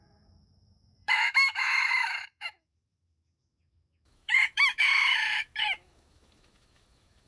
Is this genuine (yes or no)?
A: no